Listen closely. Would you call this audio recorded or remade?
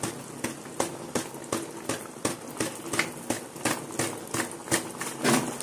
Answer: recorded